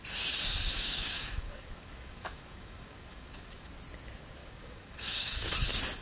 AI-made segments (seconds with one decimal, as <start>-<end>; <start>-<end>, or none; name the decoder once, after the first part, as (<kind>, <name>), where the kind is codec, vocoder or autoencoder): 0.7-3.7 (codec, DAC); 4.4-5.5